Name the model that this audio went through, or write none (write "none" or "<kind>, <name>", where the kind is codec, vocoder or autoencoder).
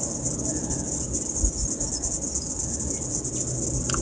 none